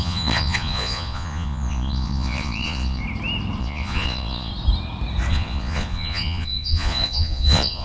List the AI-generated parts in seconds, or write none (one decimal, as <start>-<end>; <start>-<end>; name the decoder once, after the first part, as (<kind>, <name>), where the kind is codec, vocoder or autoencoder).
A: 0.0-3.0 (vocoder, Vocos); 3.6-4.5; 5.3-7.8